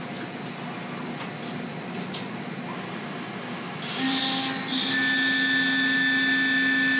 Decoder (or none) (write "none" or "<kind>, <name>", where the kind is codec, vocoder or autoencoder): none